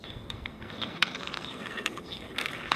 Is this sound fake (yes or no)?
yes